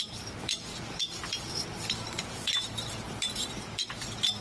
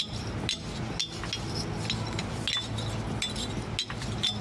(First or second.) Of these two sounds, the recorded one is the second